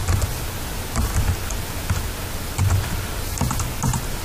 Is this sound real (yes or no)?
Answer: yes